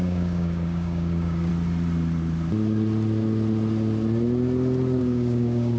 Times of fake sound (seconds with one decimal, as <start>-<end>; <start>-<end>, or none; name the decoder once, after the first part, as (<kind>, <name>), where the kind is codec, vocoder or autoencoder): 0.0-1.5 (codec, DAC); 5.0-5.8